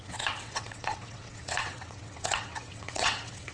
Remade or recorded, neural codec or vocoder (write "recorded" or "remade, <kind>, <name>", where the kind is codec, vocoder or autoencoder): remade, vocoder, WaveNeXt